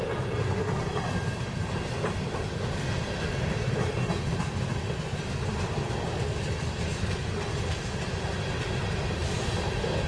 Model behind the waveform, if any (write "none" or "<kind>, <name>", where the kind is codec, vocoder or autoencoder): none